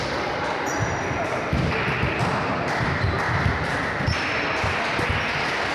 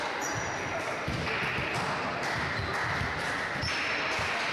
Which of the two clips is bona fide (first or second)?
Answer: second